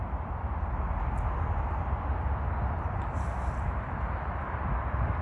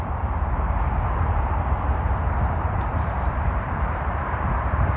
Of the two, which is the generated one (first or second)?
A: second